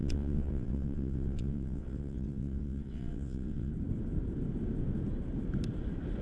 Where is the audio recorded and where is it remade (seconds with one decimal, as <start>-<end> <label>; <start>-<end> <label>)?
0.0-3.7 remade; 3.7-6.2 recorded